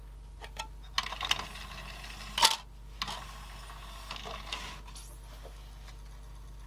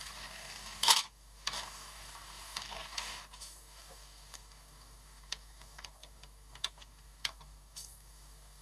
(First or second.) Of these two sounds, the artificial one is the second